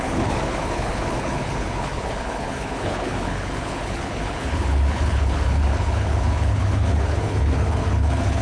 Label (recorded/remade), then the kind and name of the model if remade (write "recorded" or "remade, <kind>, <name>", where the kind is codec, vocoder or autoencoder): remade, codec, HILCodec